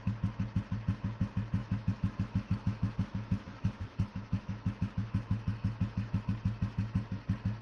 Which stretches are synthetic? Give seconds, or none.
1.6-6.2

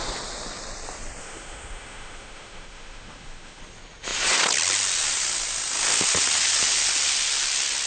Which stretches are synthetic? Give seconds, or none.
1.2-3.6

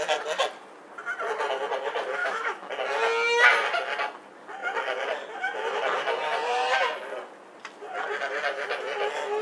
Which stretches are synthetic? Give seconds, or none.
2.2-2.7